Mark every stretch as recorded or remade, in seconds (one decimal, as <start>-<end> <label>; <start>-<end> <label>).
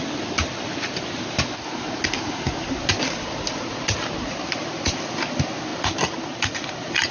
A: 0.0-7.1 recorded